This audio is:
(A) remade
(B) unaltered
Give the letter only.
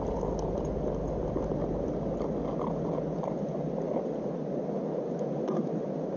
B